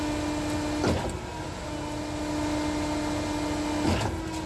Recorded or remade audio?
recorded